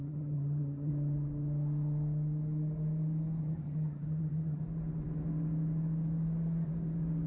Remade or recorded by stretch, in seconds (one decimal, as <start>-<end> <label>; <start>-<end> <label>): 0.0-0.9 remade; 0.9-3.4 recorded; 3.4-4.6 remade; 4.6-7.3 recorded